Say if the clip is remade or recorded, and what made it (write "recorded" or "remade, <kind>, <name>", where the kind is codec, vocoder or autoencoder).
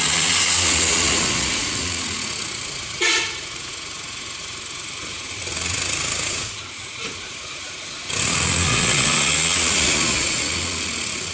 remade, vocoder, Vocos